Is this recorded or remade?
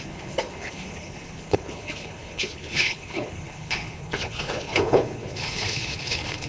remade